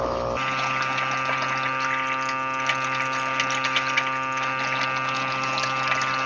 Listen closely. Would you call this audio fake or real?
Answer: real